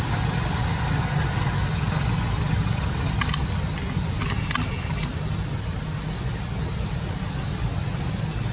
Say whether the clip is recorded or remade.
recorded